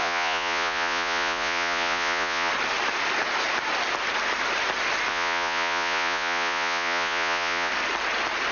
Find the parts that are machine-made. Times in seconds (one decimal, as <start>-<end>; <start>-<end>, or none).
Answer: 0.0-2.5; 5.1-7.7